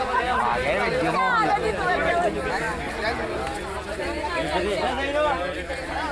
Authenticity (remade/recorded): recorded